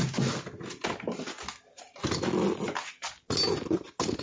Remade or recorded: recorded